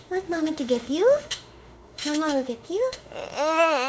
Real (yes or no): no